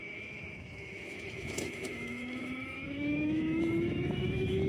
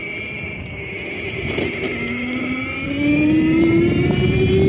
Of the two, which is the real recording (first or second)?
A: second